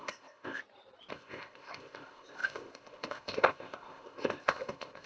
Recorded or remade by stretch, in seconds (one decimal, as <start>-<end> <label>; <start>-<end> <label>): 0.0-0.6 remade; 0.6-1.1 recorded; 1.1-5.1 remade